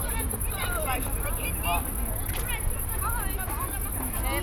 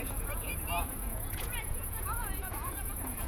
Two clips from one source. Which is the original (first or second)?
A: first